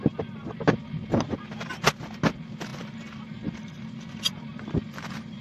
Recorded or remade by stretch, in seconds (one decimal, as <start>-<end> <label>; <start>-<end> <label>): 0.0-5.4 recorded